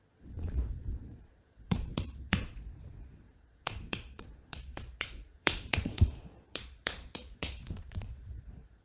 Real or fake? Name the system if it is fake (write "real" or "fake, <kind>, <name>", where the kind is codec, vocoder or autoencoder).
fake, vocoder, Vocos